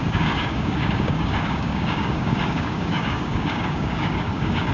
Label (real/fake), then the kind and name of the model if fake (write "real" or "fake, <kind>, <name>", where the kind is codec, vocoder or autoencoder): fake, codec, DAC